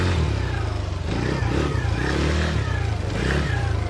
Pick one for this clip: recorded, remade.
recorded